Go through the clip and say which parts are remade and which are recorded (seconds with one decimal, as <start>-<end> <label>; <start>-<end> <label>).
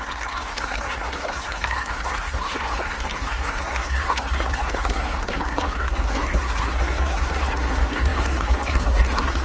0.0-9.4 remade